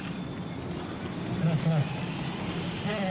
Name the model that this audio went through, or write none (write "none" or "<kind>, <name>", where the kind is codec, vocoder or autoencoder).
none